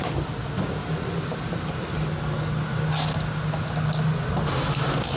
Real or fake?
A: real